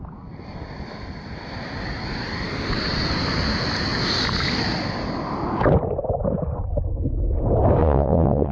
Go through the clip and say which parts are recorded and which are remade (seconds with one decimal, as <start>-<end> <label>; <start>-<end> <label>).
0.0-7.8 recorded; 7.8-8.5 remade